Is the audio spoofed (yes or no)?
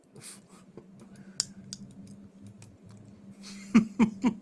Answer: no